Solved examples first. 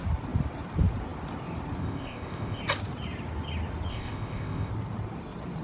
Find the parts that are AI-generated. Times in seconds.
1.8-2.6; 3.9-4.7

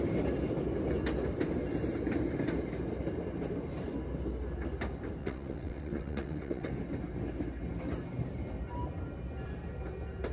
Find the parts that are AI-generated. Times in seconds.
5.2-6.7

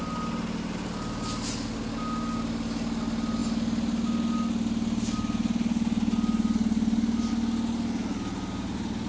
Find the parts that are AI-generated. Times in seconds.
none

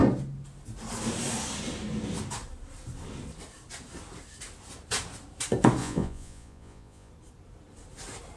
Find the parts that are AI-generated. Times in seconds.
5.8-7.1

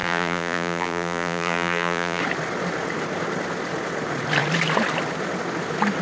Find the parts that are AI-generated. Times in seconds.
0.0-2.2

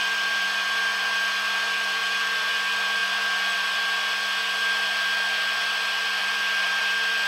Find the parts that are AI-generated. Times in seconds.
2.0-2.5; 3.0-3.9; 6.2-6.8

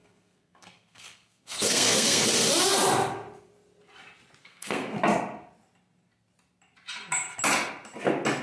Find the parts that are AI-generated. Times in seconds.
0.0-2.2; 4.4-4.9